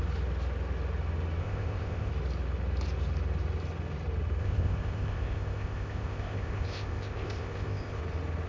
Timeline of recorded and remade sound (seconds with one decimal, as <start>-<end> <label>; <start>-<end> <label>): 0.0-1.4 recorded; 1.4-2.1 remade; 2.1-4.4 recorded; 4.4-8.0 remade; 8.0-8.5 recorded